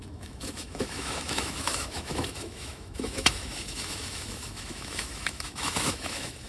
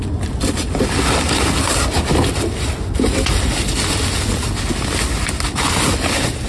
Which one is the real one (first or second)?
second